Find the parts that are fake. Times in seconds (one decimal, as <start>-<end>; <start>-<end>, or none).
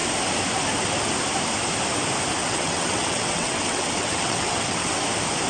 2.4-5.0